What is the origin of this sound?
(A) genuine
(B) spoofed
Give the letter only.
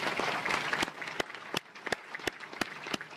A